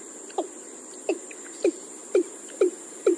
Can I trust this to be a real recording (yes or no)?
yes